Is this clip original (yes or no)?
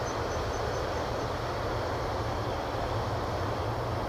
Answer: yes